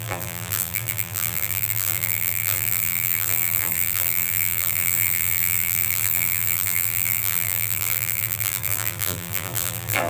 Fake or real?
fake